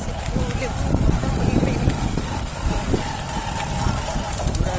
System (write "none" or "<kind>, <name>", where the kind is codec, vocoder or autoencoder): none